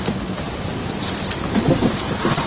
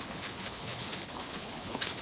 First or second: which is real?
first